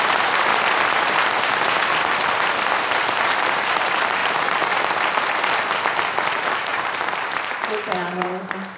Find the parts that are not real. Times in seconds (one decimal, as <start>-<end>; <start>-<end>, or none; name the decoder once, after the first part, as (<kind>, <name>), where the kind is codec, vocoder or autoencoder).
0.0-0.5 (vocoder, BigVGAN v2); 2.7-4.2; 6.3-8.8